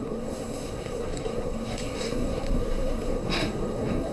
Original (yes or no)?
no